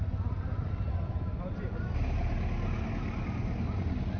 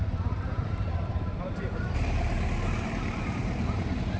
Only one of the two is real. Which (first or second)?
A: first